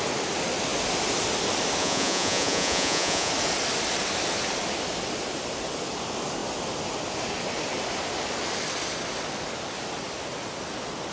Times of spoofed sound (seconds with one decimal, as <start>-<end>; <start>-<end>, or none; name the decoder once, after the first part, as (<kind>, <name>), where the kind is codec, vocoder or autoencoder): 1.8-3.3 (vocoder, Vocos)